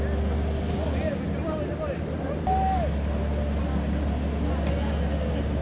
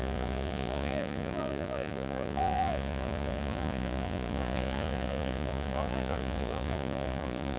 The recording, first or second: first